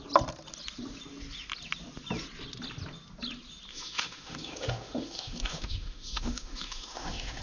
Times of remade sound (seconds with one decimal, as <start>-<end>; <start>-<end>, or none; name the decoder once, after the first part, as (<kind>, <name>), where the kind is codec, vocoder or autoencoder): 3.7-7.4 (autoencoder, DAC-VAE)